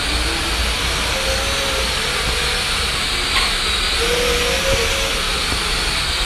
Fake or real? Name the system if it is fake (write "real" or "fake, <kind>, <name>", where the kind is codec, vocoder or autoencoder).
real